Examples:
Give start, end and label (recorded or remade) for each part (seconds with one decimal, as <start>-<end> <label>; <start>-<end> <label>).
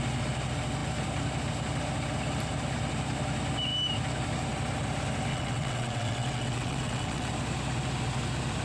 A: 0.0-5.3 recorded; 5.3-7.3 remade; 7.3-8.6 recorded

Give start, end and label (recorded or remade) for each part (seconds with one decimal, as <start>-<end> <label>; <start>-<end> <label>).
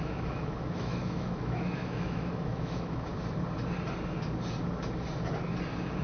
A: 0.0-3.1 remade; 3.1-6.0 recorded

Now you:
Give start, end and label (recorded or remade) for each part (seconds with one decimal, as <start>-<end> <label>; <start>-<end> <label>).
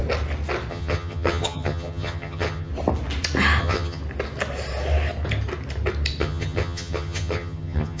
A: 0.0-0.7 recorded; 0.7-2.7 remade; 2.7-3.6 recorded; 3.6-4.0 remade; 4.0-6.2 recorded; 6.2-8.0 remade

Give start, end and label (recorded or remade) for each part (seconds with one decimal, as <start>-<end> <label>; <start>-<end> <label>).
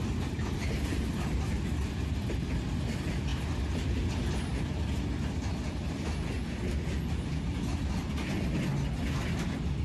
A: 0.0-9.8 recorded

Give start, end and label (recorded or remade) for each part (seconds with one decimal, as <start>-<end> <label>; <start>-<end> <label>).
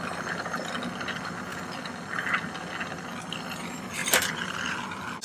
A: 0.0-4.0 recorded; 4.0-4.7 remade; 4.7-5.2 recorded